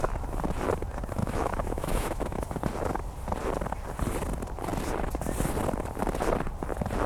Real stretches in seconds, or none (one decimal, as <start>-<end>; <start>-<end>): 0.0-1.2; 2.6-7.1